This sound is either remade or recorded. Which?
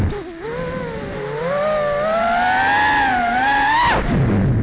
recorded